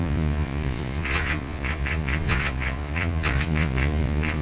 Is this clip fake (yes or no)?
yes